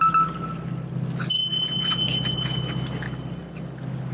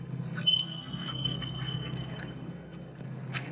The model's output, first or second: second